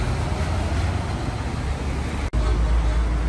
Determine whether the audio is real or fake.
real